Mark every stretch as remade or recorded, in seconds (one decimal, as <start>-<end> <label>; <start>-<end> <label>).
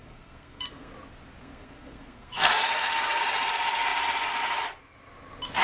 0.0-0.9 remade; 0.9-1.4 recorded; 1.4-3.2 remade; 3.2-5.6 recorded